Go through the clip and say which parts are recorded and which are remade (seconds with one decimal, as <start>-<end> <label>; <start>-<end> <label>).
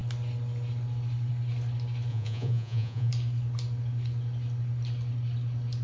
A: 0.0-2.1 recorded; 2.1-3.1 remade; 3.1-5.8 recorded